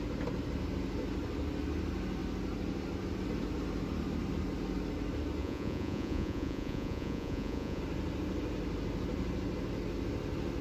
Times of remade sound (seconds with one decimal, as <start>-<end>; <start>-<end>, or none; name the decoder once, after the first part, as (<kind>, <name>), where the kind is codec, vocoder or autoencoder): 5.4-7.8 (vocoder, Vocos)

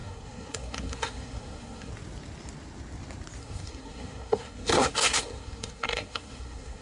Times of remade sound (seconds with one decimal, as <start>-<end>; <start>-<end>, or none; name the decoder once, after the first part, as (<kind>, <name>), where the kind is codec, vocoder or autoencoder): 0.0-1.9 (codec, SNAC); 3.4-6.8

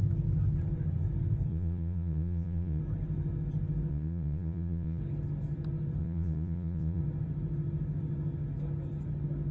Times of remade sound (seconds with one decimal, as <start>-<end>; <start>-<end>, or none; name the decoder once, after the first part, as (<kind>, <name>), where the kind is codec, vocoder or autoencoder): 1.5-2.8 (vocoder, Vocos); 3.9-5.0; 6.0-7.0

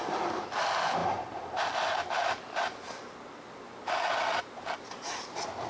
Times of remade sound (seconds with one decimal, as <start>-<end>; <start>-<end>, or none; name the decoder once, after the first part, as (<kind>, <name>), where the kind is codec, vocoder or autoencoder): none